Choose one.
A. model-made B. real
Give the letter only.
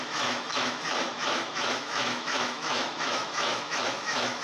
A